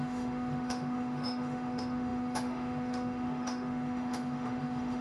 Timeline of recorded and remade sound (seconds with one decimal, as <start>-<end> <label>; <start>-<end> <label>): 0.0-5.0 remade